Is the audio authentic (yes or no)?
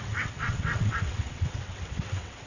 no